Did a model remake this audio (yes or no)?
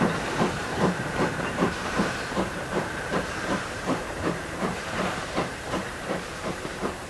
yes